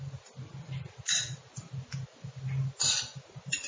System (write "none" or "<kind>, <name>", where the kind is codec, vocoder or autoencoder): none